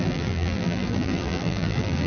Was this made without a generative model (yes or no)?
no